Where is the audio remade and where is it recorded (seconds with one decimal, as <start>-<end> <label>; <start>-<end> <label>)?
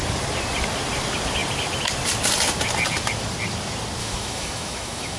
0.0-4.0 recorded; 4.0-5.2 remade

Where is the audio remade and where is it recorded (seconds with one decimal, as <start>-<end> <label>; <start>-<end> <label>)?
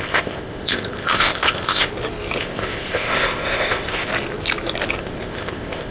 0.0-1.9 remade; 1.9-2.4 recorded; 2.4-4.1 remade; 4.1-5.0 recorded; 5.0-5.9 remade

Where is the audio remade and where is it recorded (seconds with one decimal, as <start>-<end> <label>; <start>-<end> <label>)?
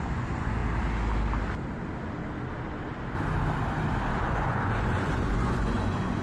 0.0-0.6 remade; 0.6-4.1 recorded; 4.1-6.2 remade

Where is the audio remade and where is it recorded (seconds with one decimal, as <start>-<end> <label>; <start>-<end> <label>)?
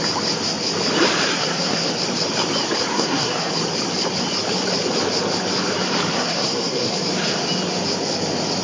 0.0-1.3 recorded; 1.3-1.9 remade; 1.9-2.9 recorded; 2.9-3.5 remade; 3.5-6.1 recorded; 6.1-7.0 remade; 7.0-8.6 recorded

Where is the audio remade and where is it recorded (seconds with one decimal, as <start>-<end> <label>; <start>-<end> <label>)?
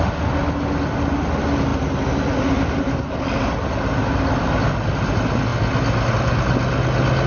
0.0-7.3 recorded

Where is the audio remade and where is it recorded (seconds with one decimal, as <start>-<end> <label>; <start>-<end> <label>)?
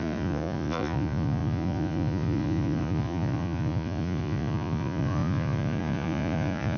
0.0-6.8 remade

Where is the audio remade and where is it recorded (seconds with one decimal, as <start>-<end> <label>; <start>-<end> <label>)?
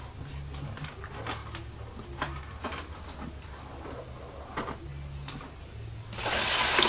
0.0-6.9 recorded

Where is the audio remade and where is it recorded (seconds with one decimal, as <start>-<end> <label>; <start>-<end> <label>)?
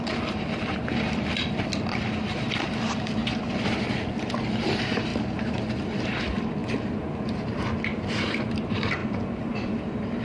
0.0-3.2 remade; 3.2-4.5 recorded; 4.5-5.1 remade; 5.1-5.8 recorded; 5.8-6.6 remade; 6.6-8.5 recorded; 8.5-9.0 remade; 9.0-9.5 recorded; 9.5-10.2 remade